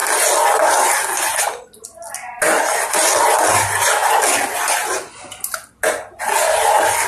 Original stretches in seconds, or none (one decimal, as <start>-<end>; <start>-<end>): 0.0-7.1